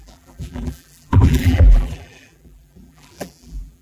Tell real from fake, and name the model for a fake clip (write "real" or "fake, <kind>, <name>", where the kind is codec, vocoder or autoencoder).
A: fake, vocoder, BigVGAN v2